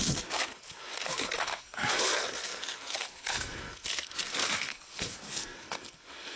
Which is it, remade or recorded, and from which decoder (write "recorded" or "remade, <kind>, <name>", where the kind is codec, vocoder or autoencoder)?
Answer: remade, codec, SNAC